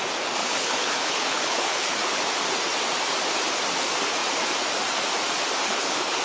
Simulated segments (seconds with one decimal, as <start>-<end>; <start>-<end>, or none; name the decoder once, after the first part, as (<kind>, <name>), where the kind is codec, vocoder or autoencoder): 0.4-2.2 (codec, HILCodec); 5.6-6.2